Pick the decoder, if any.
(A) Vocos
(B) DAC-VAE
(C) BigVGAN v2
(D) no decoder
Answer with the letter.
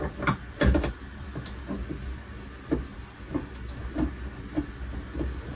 D